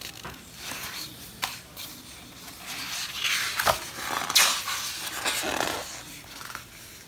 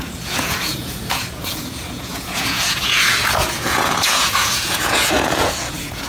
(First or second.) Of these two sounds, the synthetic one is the second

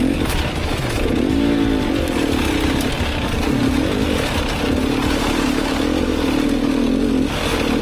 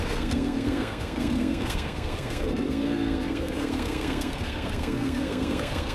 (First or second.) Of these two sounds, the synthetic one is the second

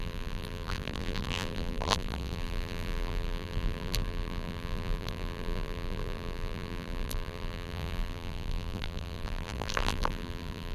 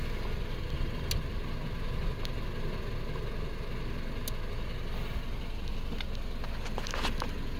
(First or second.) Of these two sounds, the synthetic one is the first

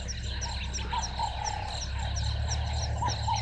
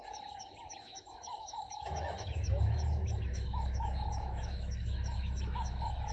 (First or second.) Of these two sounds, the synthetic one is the second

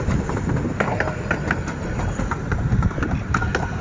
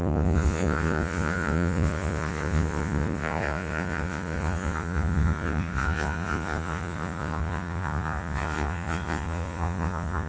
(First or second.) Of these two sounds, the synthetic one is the second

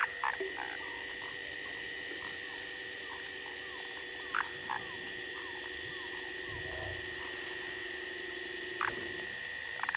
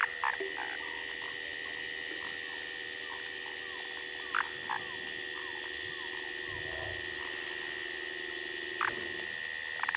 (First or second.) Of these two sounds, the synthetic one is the first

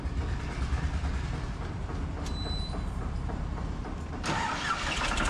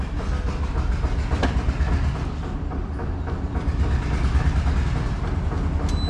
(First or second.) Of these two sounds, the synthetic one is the first